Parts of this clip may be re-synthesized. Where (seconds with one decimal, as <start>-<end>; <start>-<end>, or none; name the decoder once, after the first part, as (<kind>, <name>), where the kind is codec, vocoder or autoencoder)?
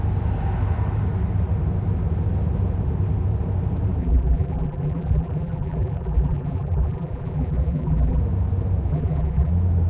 4.0-8.2 (vocoder, BigVGAN v2); 8.9-9.5